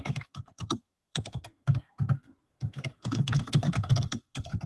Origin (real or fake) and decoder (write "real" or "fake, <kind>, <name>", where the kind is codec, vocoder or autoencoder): fake, codec, SNAC